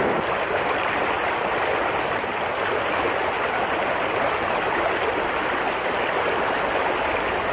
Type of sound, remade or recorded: recorded